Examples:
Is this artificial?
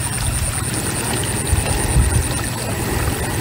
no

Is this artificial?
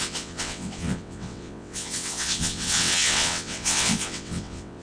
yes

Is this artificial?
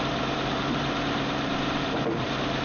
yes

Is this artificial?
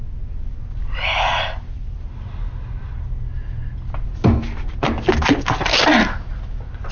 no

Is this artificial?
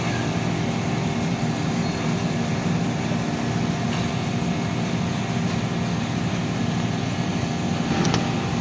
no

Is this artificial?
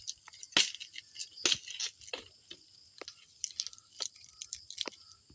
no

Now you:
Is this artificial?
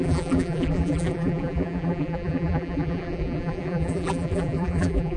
yes